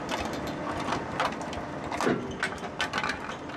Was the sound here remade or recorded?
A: recorded